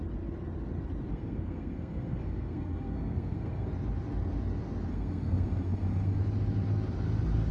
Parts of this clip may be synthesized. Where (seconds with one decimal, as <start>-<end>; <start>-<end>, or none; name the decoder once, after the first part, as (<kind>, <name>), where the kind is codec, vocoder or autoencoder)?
1.1-3.7 (codec, SNAC); 4.9-6.2